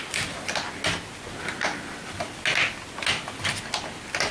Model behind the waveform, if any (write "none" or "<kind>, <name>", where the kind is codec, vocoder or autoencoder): none